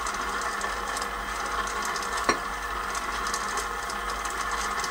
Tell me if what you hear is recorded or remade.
recorded